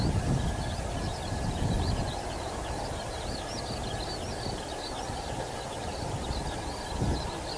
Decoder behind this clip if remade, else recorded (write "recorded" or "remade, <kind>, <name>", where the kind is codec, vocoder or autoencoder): recorded